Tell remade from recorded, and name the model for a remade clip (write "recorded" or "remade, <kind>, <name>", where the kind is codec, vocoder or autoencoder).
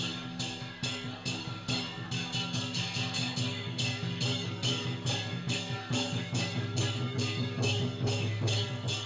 remade, codec, DAC